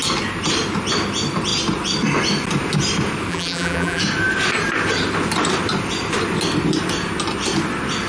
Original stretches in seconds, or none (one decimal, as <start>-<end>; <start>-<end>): 0.0-3.3; 4.0-8.1